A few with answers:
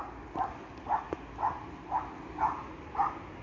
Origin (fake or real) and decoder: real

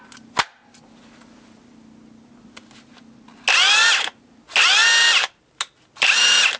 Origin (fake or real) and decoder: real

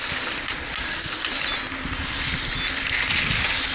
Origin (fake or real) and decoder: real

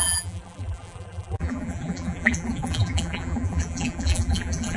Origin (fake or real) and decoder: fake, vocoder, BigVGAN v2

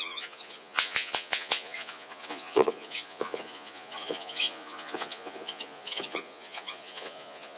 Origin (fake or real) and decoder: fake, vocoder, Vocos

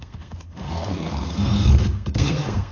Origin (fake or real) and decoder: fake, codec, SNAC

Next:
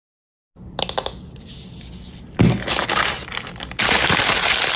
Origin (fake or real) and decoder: real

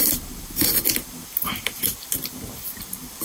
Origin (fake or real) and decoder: real